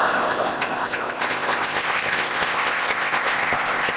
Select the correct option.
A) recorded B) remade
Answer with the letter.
B